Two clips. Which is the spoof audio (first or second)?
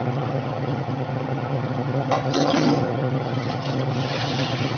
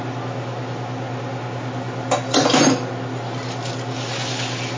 first